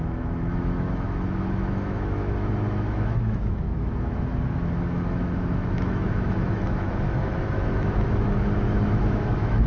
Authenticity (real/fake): fake